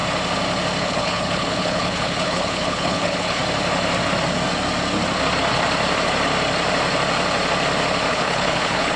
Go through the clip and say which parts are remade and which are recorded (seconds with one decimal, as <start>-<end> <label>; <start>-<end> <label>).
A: 0.0-0.8 recorded; 0.8-3.4 remade; 3.4-8.1 recorded; 8.1-9.0 remade